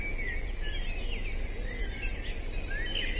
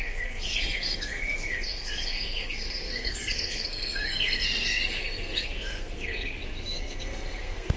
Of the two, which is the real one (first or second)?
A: first